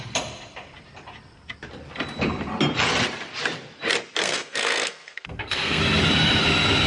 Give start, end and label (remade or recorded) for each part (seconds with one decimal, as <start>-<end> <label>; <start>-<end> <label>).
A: 0.0-4.2 recorded; 4.2-5.8 remade; 5.8-6.9 recorded